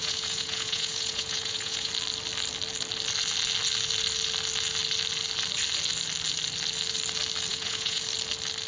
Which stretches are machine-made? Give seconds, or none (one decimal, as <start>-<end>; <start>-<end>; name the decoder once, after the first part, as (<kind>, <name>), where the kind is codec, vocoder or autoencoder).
0.0-1.9 (vocoder, Vocos); 7.5-8.0